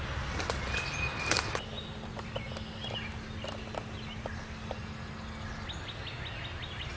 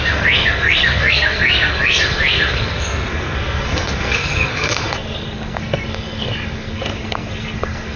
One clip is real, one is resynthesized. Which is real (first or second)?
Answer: first